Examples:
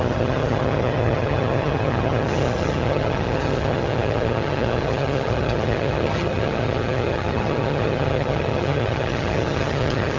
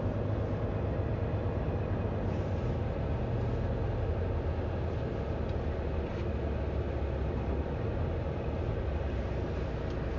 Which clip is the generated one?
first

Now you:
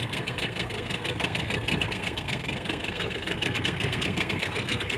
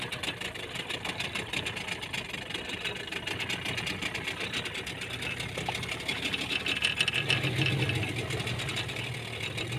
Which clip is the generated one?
first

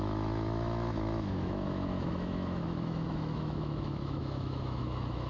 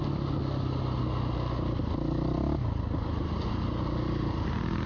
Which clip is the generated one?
first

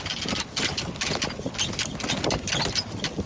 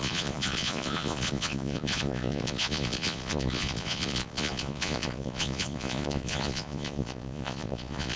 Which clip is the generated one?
second